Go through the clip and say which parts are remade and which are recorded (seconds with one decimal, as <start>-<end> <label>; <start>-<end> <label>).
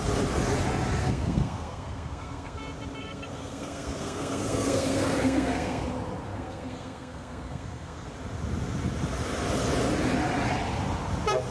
0.0-1.0 recorded; 1.0-2.6 remade; 2.6-3.0 recorded; 3.0-5.8 remade; 5.8-6.3 recorded; 6.3-8.1 remade; 8.1-11.5 recorded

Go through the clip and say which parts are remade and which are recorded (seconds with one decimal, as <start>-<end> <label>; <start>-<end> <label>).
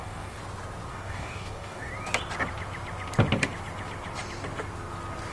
0.0-0.4 remade; 0.4-0.9 recorded; 0.9-1.9 remade; 1.9-5.3 recorded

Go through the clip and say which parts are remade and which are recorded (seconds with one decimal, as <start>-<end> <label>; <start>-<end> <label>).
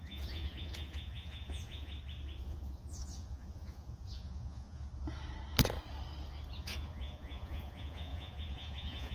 0.0-1.9 remade; 1.9-2.4 recorded; 2.4-4.8 remade; 4.8-6.6 recorded; 6.6-9.1 remade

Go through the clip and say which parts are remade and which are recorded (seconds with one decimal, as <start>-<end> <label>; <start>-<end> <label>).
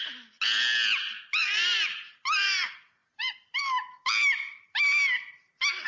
0.0-3.0 recorded; 3.0-3.6 remade; 3.6-5.9 recorded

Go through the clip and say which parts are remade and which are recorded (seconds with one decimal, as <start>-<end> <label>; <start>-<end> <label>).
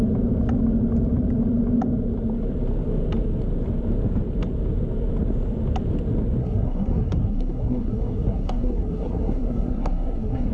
0.0-6.4 recorded; 6.4-10.5 remade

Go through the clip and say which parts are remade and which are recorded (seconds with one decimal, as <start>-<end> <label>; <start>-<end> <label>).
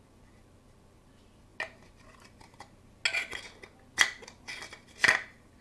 0.0-5.6 recorded